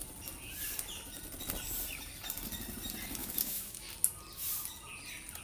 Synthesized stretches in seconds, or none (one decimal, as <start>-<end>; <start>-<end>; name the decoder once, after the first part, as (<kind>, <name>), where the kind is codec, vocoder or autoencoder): 3.2-3.9 (autoencoder, DAC-VAE)